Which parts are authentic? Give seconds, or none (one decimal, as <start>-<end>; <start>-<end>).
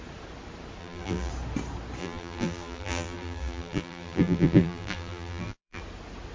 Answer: 0.0-0.8; 1.3-2.0; 5.8-6.3